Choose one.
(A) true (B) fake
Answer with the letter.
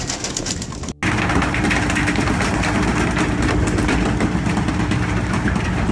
A